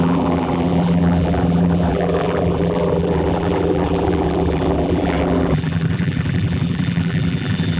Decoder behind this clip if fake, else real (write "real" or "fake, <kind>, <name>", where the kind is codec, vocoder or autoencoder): fake, vocoder, BigVGAN v2